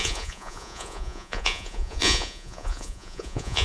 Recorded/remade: remade